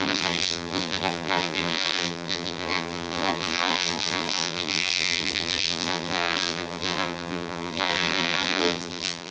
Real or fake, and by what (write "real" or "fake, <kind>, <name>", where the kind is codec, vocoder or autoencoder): fake, vocoder, BigVGAN v2